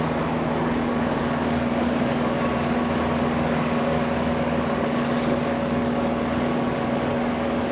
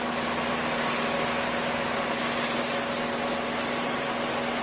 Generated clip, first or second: first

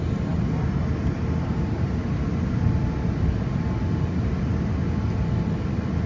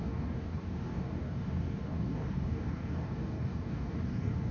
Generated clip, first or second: second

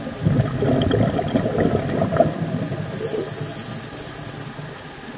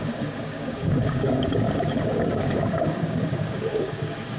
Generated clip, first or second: second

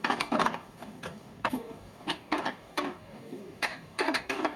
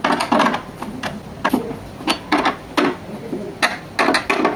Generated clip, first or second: first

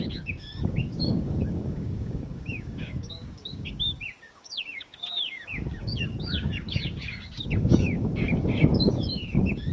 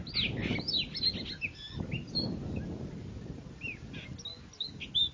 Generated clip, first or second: first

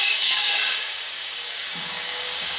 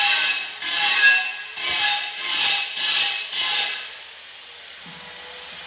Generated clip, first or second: first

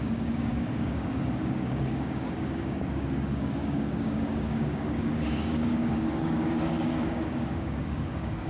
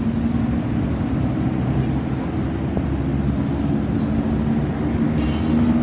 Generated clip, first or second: first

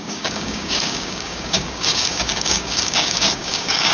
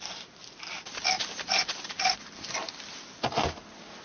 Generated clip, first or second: first